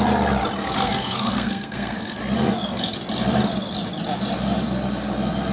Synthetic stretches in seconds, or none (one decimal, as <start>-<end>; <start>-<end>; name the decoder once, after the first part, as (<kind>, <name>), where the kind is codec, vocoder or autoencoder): 0.6-2.2 (codec, SNAC)